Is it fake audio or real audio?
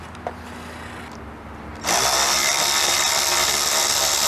real